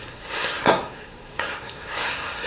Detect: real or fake fake